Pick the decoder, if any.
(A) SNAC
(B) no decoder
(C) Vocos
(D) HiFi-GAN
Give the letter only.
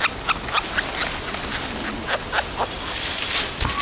B